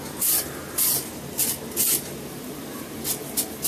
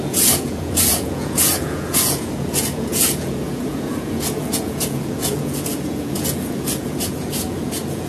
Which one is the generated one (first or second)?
second